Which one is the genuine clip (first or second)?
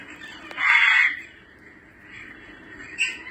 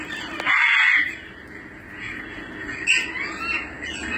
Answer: second